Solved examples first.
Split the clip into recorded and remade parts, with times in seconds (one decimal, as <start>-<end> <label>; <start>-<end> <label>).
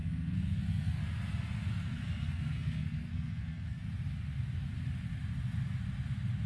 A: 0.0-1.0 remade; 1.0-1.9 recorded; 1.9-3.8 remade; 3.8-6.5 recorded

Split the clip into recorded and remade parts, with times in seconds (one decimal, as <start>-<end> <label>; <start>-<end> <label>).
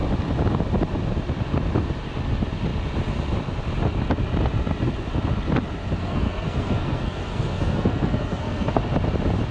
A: 0.0-6.0 recorded; 6.0-8.8 remade; 8.8-9.5 recorded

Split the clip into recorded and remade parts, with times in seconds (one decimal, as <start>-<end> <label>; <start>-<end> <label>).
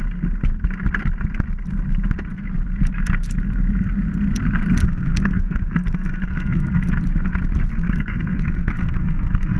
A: 0.0-4.8 recorded; 4.8-6.9 remade; 6.9-7.7 recorded; 7.7-9.6 remade